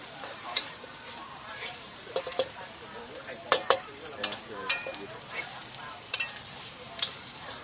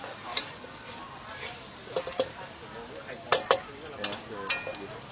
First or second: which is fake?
first